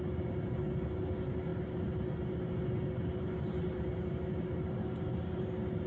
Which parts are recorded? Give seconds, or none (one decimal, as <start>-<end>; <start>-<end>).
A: 0.0-5.9